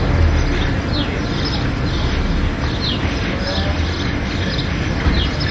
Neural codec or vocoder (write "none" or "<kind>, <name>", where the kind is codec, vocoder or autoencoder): none